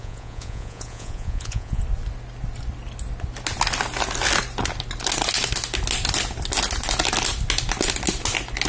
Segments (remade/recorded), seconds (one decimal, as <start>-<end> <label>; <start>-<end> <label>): 0.0-1.8 remade; 1.8-8.7 recorded